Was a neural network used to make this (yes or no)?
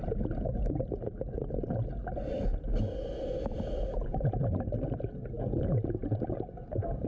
no